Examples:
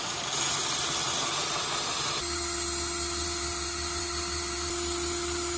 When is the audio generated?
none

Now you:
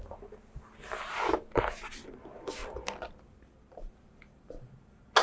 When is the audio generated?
none